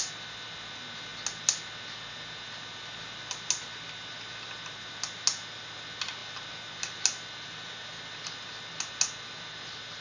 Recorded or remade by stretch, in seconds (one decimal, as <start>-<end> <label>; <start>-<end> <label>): 0.0-10.0 recorded